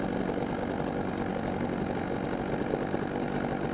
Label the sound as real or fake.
real